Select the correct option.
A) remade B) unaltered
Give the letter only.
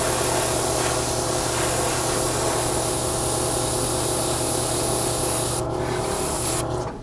B